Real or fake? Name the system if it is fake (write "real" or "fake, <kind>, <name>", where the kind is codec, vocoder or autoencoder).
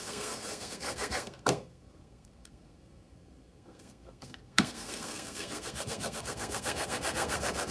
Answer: fake, codec, SNAC